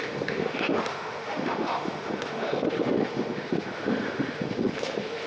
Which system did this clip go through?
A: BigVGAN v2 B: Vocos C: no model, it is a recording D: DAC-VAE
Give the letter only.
D